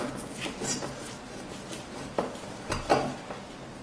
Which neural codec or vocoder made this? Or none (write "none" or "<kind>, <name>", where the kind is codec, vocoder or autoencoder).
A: none